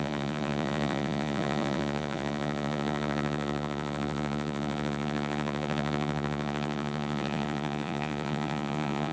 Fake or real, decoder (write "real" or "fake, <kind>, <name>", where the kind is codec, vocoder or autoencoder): fake, vocoder, Vocos